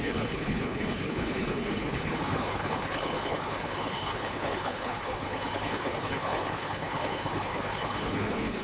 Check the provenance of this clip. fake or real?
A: fake